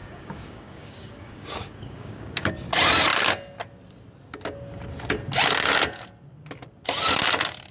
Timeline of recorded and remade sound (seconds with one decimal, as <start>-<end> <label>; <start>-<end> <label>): 0.0-2.5 remade; 2.5-7.7 recorded

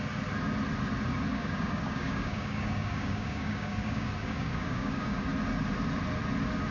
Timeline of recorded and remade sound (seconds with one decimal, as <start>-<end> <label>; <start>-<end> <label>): 0.0-1.3 recorded; 1.3-5.3 remade; 5.3-6.7 recorded

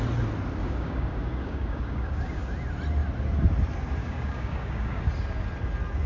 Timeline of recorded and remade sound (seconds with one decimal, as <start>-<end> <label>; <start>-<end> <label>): 0.0-0.6 recorded; 0.6-2.4 remade; 2.4-4.0 recorded; 4.0-5.0 remade; 5.0-6.1 recorded